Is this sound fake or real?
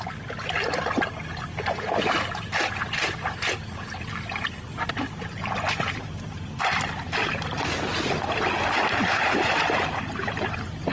real